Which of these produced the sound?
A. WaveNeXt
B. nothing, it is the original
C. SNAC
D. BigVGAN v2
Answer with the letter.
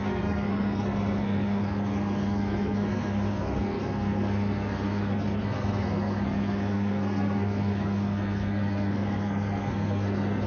C